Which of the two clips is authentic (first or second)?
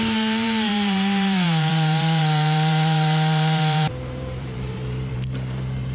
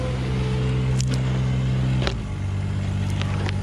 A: second